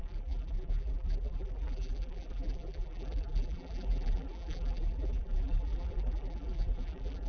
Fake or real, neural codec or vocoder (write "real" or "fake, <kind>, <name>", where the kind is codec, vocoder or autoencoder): fake, vocoder, BigVGAN v2